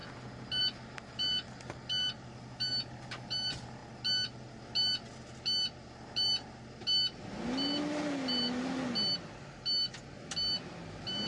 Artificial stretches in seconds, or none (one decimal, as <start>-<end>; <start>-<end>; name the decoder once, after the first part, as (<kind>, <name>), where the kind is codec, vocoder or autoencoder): none